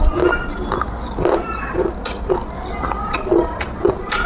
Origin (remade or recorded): recorded